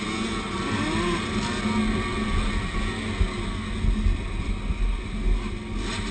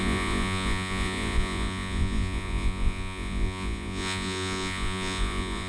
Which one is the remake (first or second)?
second